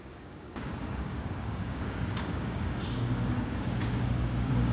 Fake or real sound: fake